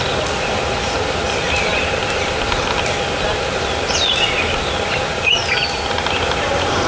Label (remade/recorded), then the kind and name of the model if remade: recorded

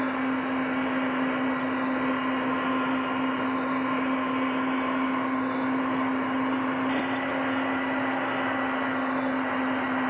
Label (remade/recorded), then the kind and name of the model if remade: recorded